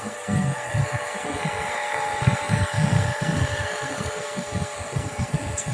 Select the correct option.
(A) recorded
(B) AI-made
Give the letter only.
B